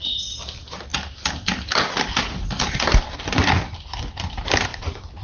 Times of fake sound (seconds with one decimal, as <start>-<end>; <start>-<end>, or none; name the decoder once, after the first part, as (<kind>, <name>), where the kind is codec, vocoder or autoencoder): none